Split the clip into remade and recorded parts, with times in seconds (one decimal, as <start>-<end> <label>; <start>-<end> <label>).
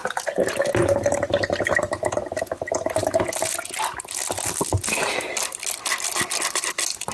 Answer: 0.0-7.1 recorded